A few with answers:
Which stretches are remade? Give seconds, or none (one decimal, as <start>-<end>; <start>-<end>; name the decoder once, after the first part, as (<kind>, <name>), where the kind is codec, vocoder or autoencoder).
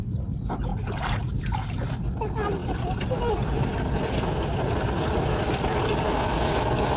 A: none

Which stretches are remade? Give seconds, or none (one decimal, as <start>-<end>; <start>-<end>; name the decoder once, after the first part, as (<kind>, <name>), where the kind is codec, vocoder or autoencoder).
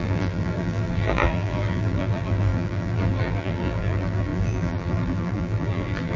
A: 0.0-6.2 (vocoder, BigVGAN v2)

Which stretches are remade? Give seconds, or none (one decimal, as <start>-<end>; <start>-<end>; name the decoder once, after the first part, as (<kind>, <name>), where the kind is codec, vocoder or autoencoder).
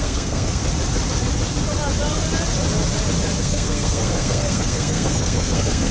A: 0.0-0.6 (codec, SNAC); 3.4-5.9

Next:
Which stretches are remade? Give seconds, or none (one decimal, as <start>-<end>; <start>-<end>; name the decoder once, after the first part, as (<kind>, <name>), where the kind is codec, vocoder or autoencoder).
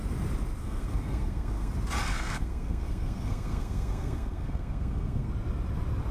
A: 0.6-1.7 (codec, SNAC); 2.1-5.3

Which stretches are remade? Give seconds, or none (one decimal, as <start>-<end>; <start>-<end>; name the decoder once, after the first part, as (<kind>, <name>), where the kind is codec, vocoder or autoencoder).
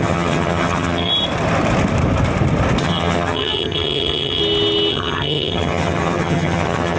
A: 0.0-1.1 (vocoder, HiFi-GAN); 2.8-4.4; 4.9-7.0